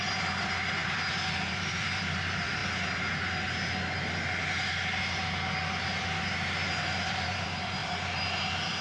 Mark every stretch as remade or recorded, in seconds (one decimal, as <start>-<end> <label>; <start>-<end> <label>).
0.0-2.6 remade; 2.6-7.1 recorded; 7.1-7.8 remade; 7.8-8.8 recorded